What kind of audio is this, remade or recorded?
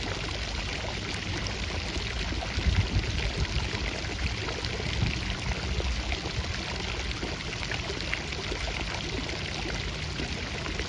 recorded